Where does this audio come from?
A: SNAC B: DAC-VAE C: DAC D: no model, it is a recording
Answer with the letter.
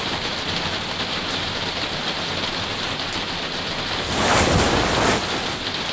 D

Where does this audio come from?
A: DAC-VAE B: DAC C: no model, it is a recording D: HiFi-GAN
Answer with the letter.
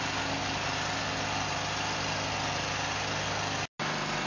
C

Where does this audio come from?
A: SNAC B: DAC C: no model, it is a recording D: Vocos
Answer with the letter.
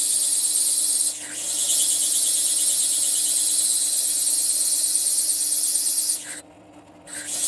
C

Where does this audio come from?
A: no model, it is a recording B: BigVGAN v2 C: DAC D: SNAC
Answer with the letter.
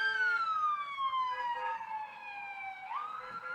C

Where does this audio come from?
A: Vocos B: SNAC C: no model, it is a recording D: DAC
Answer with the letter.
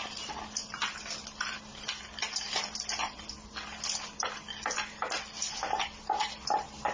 C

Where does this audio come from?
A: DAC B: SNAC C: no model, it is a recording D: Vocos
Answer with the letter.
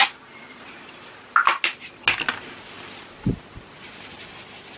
C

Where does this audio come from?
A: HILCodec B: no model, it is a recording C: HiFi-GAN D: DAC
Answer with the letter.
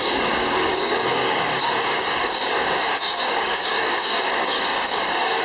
D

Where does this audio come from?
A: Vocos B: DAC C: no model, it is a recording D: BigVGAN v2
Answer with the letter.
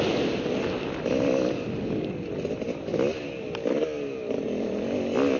C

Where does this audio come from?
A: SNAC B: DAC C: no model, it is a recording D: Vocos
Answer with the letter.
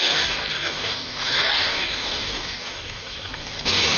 B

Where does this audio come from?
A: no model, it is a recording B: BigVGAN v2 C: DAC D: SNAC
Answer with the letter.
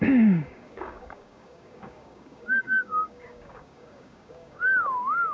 C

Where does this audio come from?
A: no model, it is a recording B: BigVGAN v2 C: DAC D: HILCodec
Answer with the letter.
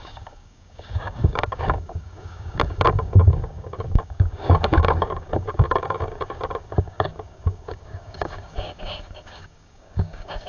C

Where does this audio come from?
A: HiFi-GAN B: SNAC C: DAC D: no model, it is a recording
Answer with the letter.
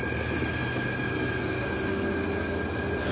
D